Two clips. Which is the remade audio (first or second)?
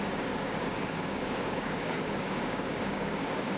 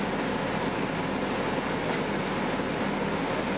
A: first